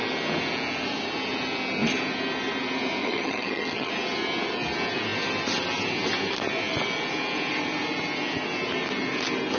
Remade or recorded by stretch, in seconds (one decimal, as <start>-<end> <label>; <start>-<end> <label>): 0.0-3.0 recorded; 3.0-3.9 remade; 3.9-9.6 recorded